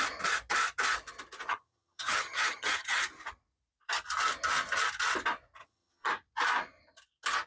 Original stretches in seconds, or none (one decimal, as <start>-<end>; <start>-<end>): 0.0-1.5; 3.0-5.6; 6.1-7.5